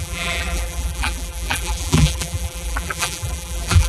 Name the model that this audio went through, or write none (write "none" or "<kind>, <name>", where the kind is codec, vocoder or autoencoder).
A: vocoder, BigVGAN v2